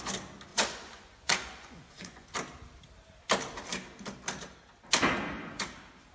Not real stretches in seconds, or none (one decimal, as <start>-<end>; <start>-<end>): 0.5-2.3

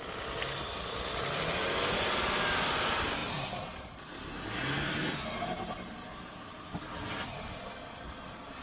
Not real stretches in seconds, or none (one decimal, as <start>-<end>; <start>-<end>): none